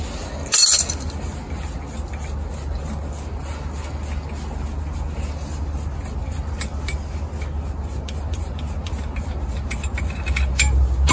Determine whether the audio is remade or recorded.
recorded